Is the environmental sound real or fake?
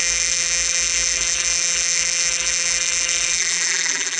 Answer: fake